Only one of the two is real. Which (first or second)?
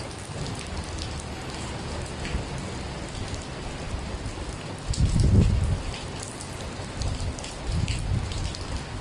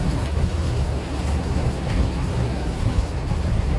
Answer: first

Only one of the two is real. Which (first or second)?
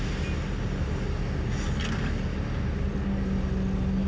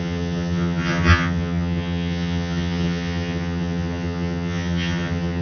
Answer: first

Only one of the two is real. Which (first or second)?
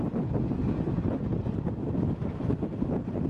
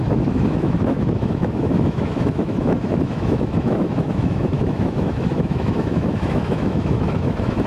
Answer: first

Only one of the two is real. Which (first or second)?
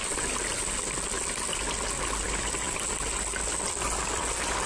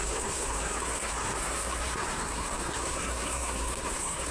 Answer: first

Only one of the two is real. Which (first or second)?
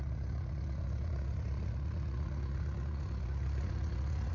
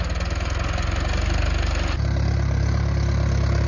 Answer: second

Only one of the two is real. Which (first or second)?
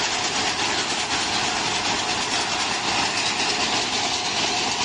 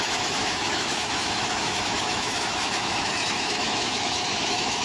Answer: first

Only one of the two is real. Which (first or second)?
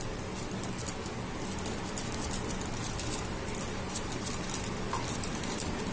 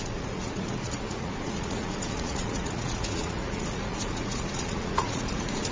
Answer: first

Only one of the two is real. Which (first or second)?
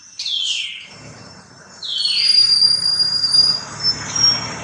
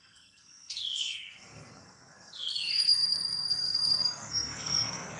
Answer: first